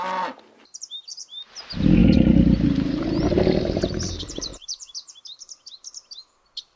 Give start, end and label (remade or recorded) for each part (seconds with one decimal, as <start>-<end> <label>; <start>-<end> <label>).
0.0-2.0 recorded; 2.0-5.4 remade; 5.4-6.8 recorded